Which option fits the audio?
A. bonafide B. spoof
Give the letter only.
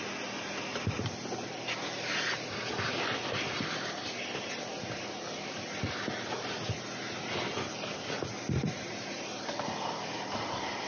A